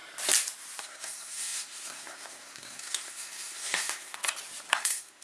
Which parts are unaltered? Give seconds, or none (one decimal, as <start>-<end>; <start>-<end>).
0.0-0.8; 4.2-4.7